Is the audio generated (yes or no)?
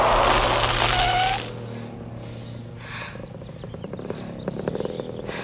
no